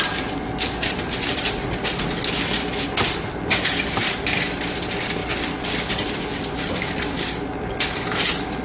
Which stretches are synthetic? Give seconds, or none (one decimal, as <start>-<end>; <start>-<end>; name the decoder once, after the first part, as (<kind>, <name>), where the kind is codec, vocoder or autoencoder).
none